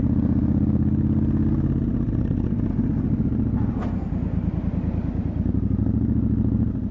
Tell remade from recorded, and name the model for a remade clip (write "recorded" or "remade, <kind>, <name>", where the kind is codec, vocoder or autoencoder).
recorded